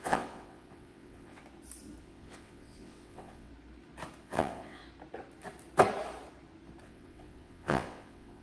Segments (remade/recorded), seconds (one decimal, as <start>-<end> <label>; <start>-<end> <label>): 0.0-1.4 remade; 1.4-2.0 recorded; 2.0-3.5 remade; 3.5-4.2 recorded; 4.2-4.8 remade; 4.8-6.8 recorded; 6.8-8.4 remade